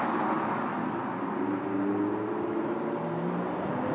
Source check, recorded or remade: recorded